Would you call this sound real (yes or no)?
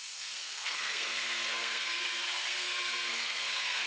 no